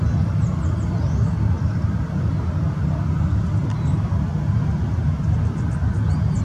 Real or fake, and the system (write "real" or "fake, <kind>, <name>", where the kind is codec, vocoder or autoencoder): real